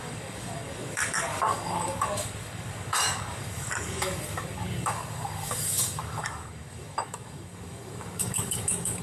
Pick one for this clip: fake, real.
fake